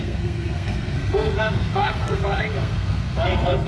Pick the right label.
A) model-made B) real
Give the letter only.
A